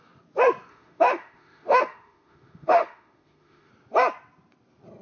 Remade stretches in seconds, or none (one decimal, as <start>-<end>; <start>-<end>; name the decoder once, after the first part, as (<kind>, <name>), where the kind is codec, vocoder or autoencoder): 0.7-3.7 (autoencoder, DAC-VAE)